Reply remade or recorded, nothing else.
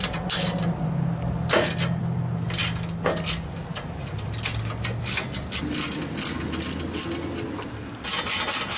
recorded